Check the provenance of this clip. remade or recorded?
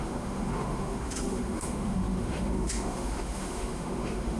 remade